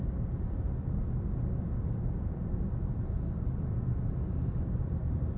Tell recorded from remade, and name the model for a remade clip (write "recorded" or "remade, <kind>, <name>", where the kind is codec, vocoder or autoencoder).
remade, vocoder, BigVGAN v2